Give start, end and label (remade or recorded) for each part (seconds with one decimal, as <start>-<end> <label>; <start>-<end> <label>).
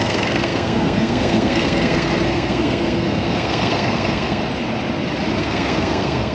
0.0-4.4 remade; 4.4-5.4 recorded; 5.4-6.3 remade